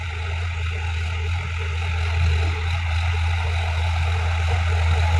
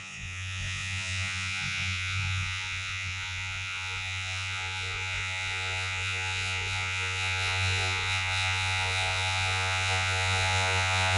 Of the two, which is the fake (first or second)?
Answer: second